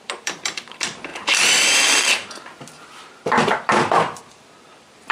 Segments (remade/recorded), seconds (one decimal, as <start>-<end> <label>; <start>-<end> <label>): 0.0-5.1 remade